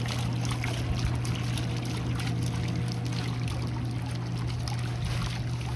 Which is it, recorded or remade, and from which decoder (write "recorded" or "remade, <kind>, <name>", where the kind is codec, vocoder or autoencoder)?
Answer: recorded